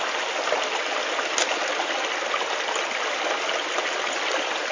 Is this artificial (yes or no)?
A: no